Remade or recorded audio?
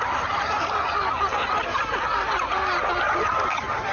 recorded